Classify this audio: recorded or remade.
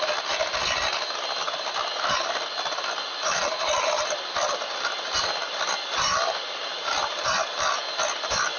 recorded